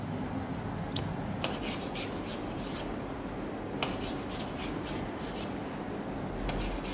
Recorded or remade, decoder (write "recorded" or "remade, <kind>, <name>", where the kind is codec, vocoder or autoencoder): recorded